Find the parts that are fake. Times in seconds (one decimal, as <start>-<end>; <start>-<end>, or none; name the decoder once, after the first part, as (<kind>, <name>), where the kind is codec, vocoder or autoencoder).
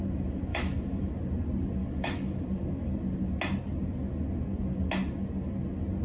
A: 0.5-1.1 (autoencoder, DAC-VAE); 1.8-2.4